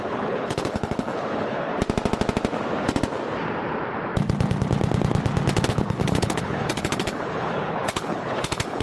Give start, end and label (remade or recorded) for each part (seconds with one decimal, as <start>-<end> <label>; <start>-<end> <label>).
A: 0.0-1.7 remade; 1.7-5.7 recorded; 5.7-8.8 remade